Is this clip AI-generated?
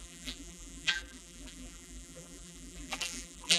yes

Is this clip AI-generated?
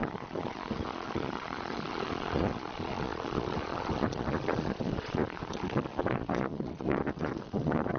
yes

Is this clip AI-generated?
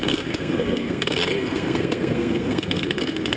yes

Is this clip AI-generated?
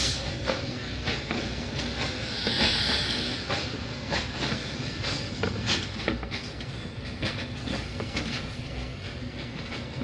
yes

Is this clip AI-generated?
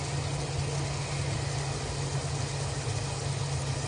no